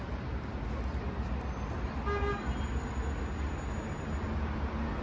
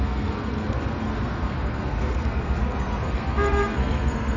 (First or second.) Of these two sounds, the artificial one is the second